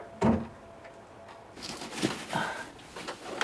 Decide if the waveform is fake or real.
real